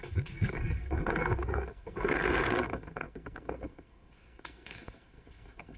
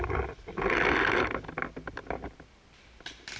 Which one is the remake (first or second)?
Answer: first